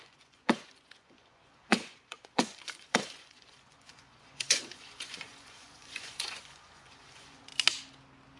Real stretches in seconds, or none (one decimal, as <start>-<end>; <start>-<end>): 7.5-8.4